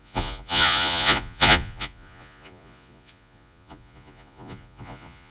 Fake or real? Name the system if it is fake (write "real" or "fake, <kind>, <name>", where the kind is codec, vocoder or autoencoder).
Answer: fake, vocoder, Vocos